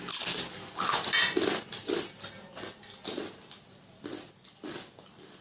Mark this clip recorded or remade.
recorded